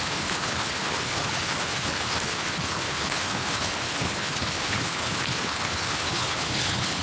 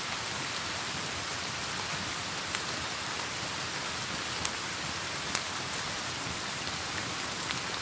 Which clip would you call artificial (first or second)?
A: first